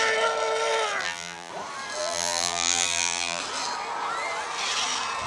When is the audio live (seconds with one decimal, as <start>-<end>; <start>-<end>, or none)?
0.0-1.0; 1.5-2.0; 3.4-5.3

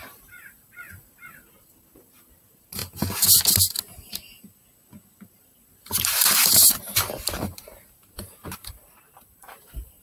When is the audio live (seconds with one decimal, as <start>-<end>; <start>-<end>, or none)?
2.8-5.2

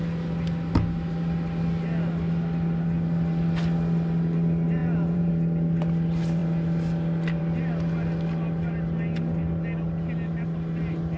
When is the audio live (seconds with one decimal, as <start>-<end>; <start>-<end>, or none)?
0.0-4.8; 5.3-11.2

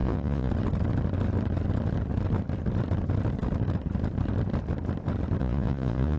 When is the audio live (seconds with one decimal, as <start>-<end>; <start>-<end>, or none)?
0.5-5.4

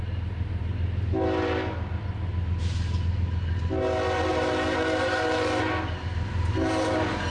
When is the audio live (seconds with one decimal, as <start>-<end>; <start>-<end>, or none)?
0.0-4.3; 5.6-7.3

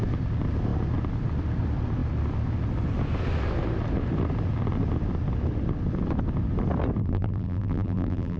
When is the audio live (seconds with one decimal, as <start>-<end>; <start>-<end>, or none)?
0.0-7.0